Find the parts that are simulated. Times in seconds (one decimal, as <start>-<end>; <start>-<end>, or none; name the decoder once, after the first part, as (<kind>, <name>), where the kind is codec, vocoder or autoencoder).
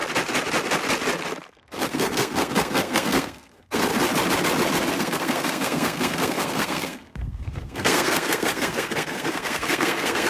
1.5-3.9 (codec, SNAC); 4.9-10.3